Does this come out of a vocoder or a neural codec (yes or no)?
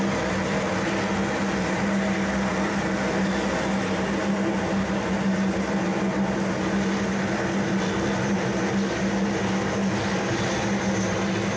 no